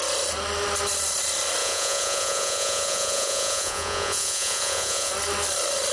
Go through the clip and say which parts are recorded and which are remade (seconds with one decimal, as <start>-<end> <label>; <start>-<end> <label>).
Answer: 0.0-1.6 recorded; 1.6-5.1 remade; 5.1-5.9 recorded